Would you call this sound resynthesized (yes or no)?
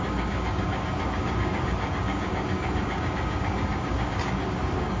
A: yes